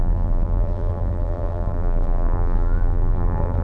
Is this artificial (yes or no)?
yes